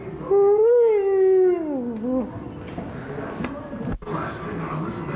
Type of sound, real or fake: real